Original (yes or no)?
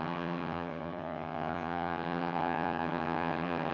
no